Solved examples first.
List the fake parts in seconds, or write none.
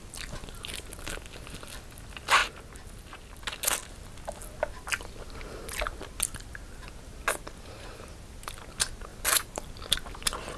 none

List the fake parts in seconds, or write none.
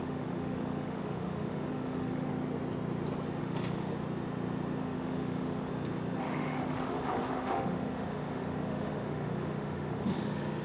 0.0-2.3; 3.4-3.9; 4.8-5.7; 6.2-10.6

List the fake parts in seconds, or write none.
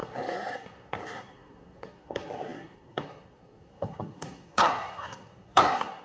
0.0-6.0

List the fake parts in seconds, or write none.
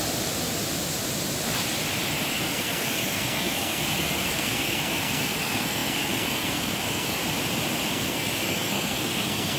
2.3-7.2; 7.9-9.6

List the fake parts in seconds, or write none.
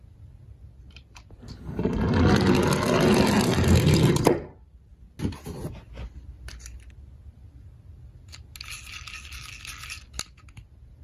none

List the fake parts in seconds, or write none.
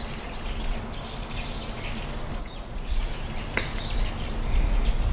2.4-3.0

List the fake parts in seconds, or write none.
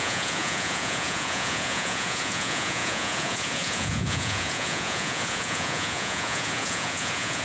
0.0-7.4